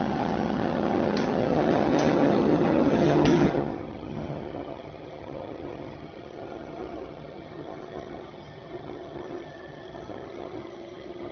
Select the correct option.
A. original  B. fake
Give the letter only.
B